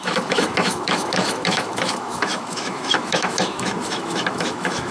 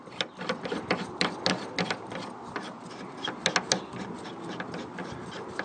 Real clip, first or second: second